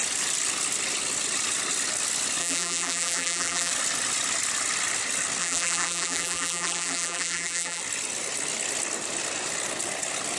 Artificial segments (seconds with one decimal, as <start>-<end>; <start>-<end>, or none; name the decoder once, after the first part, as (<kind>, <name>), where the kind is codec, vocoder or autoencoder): 2.4-3.7 (vocoder, BigVGAN v2); 5.4-7.8

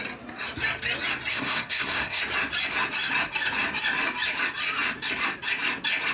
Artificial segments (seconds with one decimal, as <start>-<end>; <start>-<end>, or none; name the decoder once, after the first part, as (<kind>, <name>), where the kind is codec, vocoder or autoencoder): 1.3-2.2 (codec, SNAC)